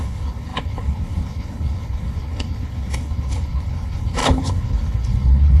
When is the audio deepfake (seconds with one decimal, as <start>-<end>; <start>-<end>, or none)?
0.0-5.6

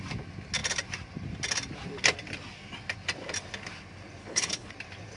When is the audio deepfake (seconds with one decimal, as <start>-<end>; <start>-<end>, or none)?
4.2-4.7

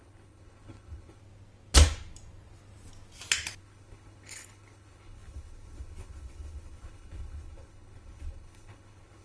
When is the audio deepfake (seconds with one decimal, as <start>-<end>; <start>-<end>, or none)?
0.0-1.2; 3.6-9.2

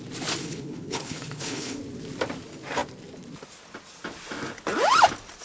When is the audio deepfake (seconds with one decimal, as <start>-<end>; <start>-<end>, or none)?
0.4-1.8